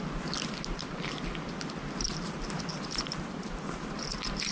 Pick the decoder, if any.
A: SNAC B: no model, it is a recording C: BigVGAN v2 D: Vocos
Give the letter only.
B